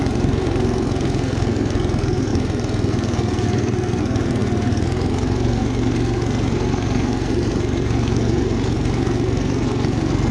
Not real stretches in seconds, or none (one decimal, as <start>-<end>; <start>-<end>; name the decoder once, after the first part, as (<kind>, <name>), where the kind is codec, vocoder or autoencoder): 0.0-10.3 (codec, SNAC)